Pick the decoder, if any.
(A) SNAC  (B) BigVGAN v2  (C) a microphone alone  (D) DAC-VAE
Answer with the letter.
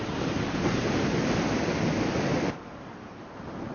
B